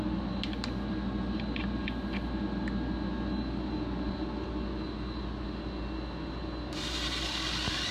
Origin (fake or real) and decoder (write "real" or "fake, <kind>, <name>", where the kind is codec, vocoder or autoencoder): real